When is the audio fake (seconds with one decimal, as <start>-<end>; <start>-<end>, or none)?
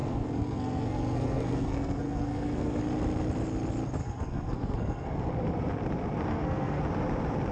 0.0-2.8; 4.0-5.3; 6.3-6.8